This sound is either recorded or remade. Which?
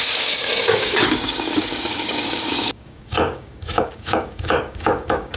remade